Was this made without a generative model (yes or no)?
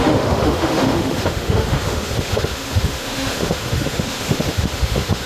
no